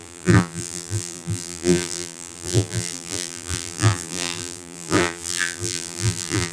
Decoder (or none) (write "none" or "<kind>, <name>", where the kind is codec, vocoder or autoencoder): vocoder, BigVGAN v2